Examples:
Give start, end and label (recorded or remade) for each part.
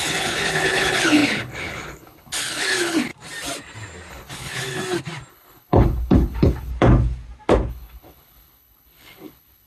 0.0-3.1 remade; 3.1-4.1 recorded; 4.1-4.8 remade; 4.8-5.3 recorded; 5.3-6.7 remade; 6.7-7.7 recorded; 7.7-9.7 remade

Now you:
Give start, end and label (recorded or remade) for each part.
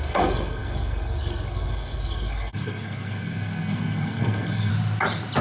0.0-4.7 remade; 4.7-5.4 recorded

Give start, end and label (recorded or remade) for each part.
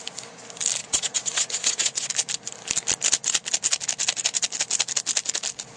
0.0-0.8 recorded; 0.8-2.1 remade; 2.1-5.8 recorded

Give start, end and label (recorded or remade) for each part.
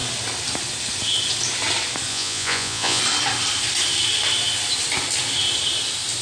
0.0-2.1 recorded; 2.1-3.0 remade; 3.0-6.2 recorded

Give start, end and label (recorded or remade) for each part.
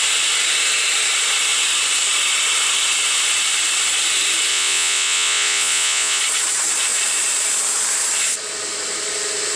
0.0-4.5 recorded; 4.5-6.2 remade; 6.2-9.6 recorded